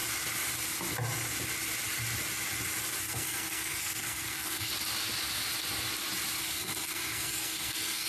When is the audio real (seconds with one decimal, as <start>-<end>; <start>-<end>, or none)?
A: 0.0-3.0; 4.7-6.4